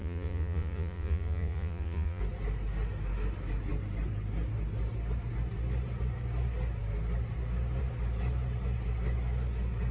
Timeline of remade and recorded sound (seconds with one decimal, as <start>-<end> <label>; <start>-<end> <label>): 0.0-2.2 remade; 2.2-9.9 recorded